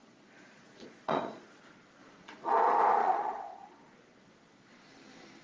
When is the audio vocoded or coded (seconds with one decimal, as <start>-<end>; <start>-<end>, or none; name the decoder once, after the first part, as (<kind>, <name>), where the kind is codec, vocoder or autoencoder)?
0.0-1.6 (vocoder, Vocos); 2.0-2.5; 3.0-4.2